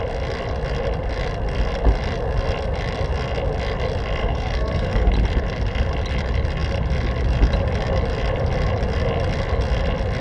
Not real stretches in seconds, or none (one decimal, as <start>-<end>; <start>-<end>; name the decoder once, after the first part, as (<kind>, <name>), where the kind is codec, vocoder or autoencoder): 4.2-5.1 (codec, SNAC)